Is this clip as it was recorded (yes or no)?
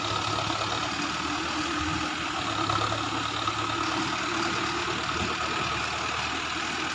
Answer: yes